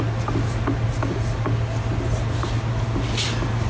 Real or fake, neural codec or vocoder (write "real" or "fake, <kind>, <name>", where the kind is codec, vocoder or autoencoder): real